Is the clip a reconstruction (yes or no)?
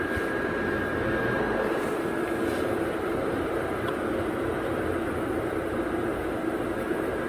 no